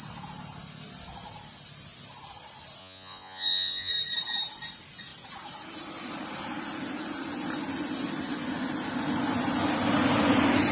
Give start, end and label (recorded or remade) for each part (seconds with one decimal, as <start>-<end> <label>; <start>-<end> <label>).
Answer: 0.0-2.8 recorded; 2.8-3.9 remade; 3.9-10.7 recorded